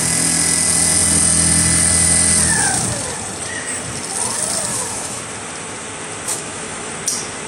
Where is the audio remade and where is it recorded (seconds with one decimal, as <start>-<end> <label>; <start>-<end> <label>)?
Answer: 0.0-4.7 recorded; 4.7-5.2 remade; 5.2-6.3 recorded; 6.3-6.9 remade; 6.9-7.5 recorded